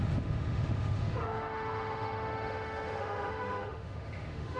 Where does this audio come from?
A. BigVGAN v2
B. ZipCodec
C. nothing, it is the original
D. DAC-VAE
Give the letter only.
D